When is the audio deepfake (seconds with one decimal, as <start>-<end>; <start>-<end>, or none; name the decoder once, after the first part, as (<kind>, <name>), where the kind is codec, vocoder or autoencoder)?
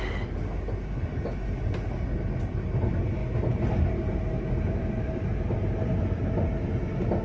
none